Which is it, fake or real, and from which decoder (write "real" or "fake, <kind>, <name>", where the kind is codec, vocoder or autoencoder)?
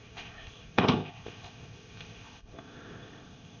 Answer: fake, codec, ZipCodec